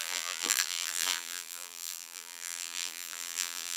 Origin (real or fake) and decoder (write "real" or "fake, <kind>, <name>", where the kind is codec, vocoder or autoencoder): fake, vocoder, BigVGAN v2